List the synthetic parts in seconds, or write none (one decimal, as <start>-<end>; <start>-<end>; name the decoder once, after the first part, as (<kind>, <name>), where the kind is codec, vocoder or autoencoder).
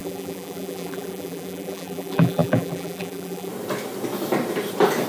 0.0-3.5 (vocoder, BigVGAN v2)